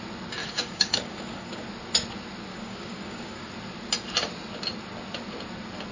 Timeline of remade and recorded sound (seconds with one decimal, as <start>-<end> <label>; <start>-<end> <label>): 0.0-0.4 recorded; 0.4-1.6 remade; 1.6-2.5 recorded; 2.5-3.5 remade; 3.5-5.9 recorded